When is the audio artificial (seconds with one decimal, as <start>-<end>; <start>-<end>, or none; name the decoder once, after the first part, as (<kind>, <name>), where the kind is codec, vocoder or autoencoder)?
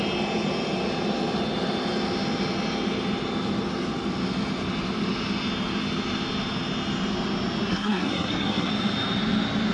7.7-8.7 (codec, SNAC)